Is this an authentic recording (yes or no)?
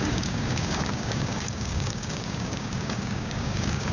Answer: no